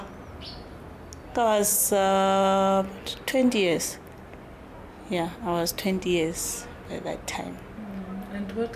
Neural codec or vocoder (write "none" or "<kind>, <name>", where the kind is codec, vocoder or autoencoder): none